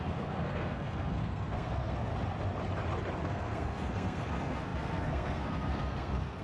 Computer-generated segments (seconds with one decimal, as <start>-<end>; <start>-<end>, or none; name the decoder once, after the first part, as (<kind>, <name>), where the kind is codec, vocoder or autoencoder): 0.0-2.1 (codec, SNAC); 3.2-6.4